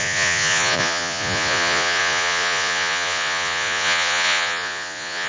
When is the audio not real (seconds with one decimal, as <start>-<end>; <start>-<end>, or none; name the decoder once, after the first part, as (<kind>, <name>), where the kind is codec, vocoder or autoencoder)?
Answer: 0.0-5.3 (vocoder, Vocos)